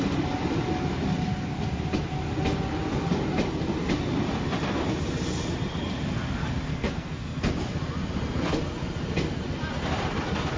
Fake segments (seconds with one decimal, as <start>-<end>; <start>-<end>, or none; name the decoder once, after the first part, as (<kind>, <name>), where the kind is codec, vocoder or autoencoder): 6.7-7.5 (codec, SNAC)